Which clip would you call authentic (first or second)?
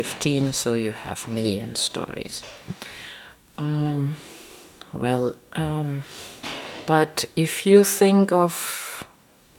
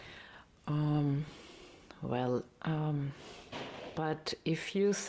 second